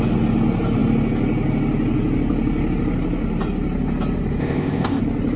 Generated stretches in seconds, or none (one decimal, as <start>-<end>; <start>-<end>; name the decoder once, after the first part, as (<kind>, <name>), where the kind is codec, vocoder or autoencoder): 4.4-5.0 (codec, ZipCodec)